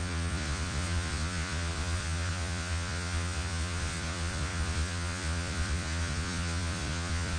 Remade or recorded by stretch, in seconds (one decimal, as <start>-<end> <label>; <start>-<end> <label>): 0.0-7.4 remade